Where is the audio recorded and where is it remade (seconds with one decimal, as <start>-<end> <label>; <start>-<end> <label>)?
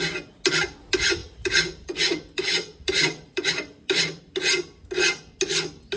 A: 0.0-1.2 recorded; 1.2-4.2 remade; 4.2-6.0 recorded